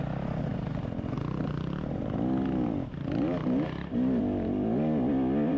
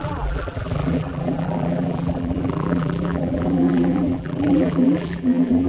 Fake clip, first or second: second